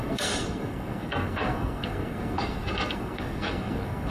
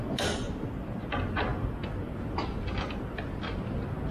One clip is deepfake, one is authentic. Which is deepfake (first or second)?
first